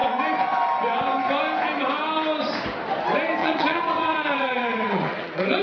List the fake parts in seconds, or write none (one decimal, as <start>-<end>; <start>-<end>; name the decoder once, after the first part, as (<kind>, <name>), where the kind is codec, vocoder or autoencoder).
3.4-5.6 (vocoder, WaveNeXt)

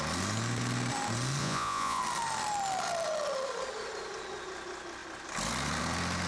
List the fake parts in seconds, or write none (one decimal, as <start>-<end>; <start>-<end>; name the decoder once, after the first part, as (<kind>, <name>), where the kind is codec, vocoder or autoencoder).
1.4-2.0 (vocoder, Vocos)

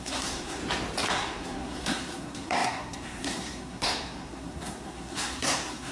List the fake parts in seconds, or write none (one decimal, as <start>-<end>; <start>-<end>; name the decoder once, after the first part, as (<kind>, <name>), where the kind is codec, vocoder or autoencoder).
0.0-0.6 (codec, SNAC); 1.1-5.9

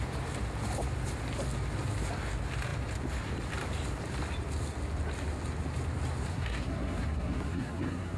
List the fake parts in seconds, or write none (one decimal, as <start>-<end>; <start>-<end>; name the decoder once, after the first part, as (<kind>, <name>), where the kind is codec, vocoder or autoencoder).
6.3-8.2 (codec, SNAC)